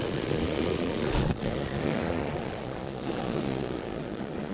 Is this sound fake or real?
fake